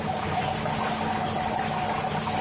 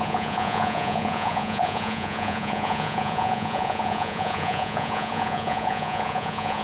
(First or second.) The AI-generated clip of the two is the second